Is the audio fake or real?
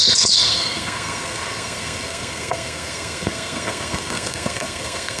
fake